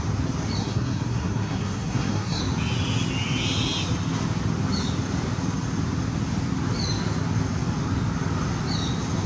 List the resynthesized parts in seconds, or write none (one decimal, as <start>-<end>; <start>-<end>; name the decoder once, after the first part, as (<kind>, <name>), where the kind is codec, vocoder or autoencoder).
0.6-2.4 (codec, SNAC)